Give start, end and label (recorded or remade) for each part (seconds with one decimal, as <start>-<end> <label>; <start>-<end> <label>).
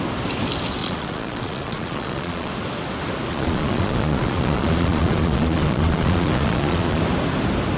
0.0-0.8 recorded; 0.8-2.5 remade; 2.5-3.3 recorded; 3.3-7.0 remade; 7.0-7.8 recorded